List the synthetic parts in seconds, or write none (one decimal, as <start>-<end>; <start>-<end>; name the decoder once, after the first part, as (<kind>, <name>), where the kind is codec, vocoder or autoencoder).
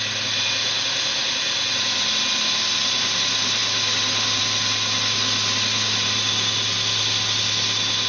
none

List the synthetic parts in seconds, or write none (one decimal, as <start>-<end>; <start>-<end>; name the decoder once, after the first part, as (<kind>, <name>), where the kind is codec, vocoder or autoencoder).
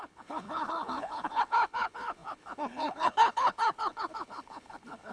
0.0-5.1 (codec, HILCodec)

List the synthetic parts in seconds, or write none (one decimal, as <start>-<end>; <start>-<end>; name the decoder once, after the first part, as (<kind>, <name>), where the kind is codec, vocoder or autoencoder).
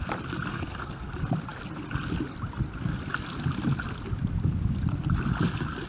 0.5-1.1 (codec, SNAC)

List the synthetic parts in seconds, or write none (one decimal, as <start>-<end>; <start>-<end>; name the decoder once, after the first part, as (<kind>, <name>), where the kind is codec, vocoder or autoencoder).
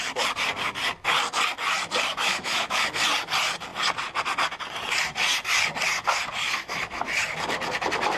2.1-2.9 (autoencoder, DAC-VAE); 6.4-7.1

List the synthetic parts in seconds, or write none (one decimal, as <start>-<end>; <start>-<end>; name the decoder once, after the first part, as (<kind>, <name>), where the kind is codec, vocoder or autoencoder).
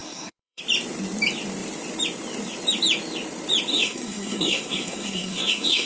0.0-0.6 (codec, SNAC); 3.7-5.9